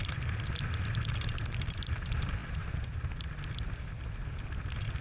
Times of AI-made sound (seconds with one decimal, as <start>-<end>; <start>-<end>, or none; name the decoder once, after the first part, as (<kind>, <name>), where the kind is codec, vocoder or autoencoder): none